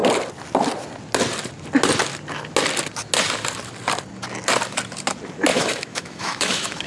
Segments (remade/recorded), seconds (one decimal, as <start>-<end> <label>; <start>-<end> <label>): 0.0-5.5 recorded; 5.5-6.9 remade